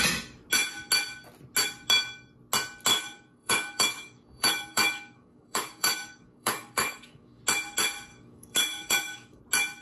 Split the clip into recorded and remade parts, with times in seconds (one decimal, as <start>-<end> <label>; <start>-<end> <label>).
0.0-2.9 recorded; 2.9-7.4 remade; 7.4-8.1 recorded; 8.1-9.4 remade; 9.4-9.8 recorded